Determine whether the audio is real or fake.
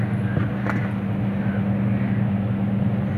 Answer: real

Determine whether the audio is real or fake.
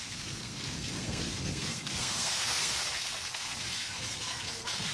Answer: fake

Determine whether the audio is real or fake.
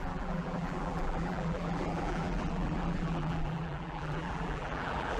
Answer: fake